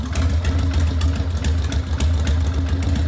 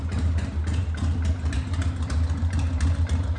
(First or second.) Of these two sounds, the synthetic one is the second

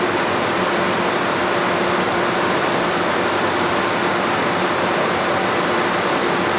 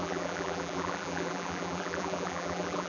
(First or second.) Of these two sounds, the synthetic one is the second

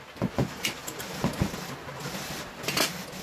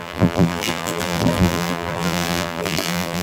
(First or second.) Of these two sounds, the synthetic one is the second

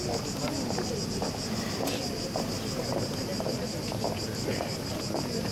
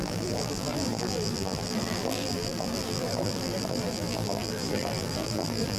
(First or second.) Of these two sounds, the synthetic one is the second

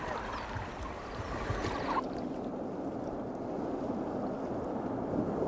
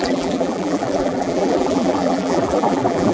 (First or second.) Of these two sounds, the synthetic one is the second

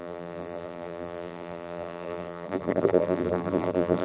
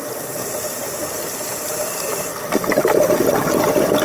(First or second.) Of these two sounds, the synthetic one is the first